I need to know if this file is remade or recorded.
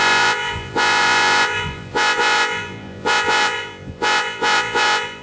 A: remade